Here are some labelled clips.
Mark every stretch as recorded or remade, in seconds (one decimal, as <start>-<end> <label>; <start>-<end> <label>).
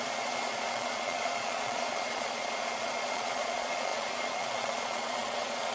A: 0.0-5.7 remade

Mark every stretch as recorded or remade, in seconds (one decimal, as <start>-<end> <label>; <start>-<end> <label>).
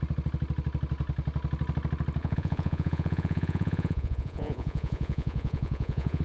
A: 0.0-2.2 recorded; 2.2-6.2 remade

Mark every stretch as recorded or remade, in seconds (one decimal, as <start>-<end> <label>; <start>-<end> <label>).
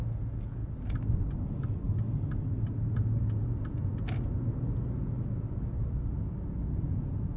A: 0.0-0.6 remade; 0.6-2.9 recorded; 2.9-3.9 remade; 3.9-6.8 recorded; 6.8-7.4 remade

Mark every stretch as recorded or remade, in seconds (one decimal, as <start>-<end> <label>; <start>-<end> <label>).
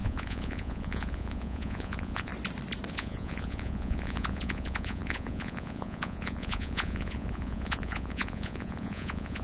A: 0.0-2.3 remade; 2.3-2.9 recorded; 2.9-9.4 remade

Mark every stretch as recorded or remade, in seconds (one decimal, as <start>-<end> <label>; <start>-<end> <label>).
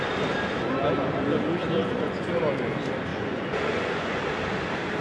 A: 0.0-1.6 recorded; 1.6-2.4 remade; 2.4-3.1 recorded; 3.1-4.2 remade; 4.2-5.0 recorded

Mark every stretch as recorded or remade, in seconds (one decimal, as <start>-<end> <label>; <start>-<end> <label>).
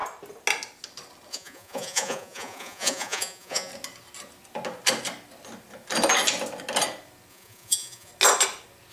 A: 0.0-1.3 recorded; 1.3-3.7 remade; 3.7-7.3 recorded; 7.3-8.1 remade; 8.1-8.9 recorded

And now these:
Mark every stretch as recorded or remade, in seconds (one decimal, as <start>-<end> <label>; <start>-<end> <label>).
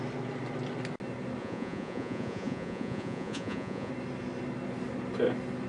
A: 0.0-1.4 recorded; 1.4-3.9 remade; 3.9-5.7 recorded